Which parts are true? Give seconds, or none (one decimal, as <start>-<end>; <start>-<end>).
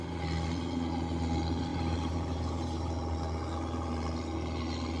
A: 0.0-1.7; 2.9-5.0